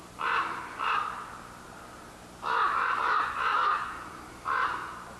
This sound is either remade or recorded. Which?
remade